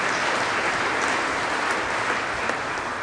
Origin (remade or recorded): recorded